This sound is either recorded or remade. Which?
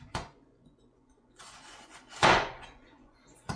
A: remade